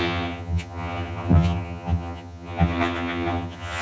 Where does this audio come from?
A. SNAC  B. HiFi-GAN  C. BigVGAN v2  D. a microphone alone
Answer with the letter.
B